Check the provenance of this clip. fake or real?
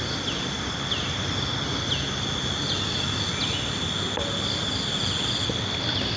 real